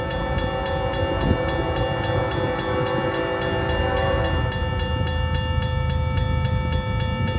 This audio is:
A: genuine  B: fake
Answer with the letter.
A